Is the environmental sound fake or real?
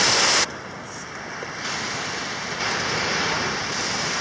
real